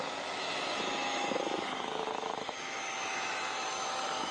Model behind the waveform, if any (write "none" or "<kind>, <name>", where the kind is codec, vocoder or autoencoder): autoencoder, DAC-VAE